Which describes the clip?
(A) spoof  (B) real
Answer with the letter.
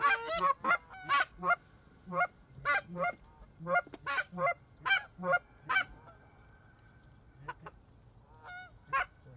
B